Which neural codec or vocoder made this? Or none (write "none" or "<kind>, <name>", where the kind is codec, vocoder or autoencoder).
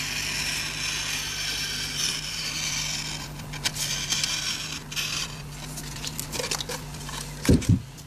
none